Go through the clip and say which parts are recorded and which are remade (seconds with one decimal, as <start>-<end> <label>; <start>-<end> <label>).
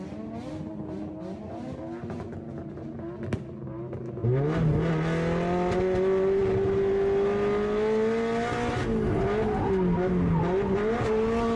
0.0-11.6 recorded